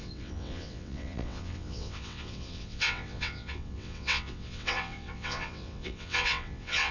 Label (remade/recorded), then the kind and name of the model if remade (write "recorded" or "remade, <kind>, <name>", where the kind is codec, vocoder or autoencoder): remade, vocoder, WaveNeXt